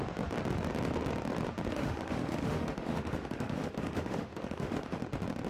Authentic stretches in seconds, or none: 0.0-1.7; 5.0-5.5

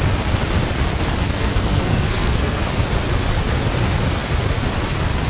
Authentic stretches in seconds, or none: 0.0-1.2; 2.6-5.3

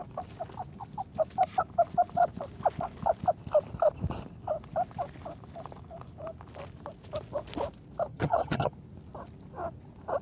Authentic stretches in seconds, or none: 0.0-8.1; 8.7-10.2

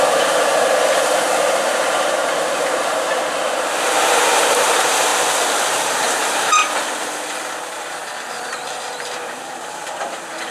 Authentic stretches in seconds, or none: 5.1-5.8; 6.6-8.3

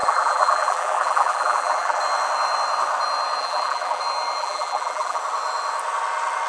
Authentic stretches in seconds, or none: 2.0-3.4; 4.0-4.4; 5.2-6.5

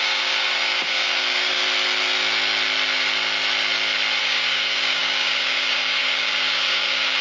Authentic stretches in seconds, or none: 1.6-4.2